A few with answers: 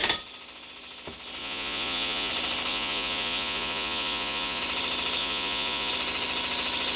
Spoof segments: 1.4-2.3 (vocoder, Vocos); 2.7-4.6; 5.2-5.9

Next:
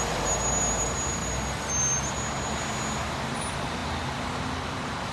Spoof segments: none

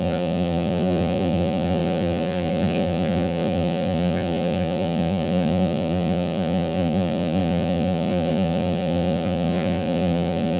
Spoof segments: 0.0-10.6 (vocoder, Vocos)

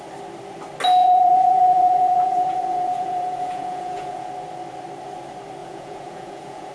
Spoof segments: 1.0-4.3 (vocoder, Vocos); 5.6-6.7

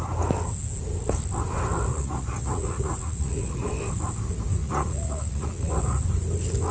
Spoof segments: 1.9-3.7 (vocoder, Vocos); 4.6-6.0

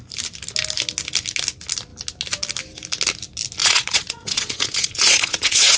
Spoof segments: 3.6-5.8 (vocoder, Vocos)

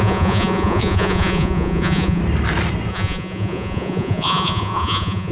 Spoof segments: 0.0-2.2 (vocoder, Vocos); 2.9-5.3

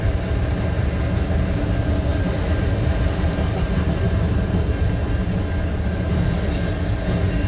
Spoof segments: none